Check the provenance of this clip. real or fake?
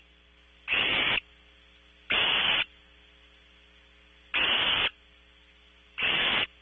real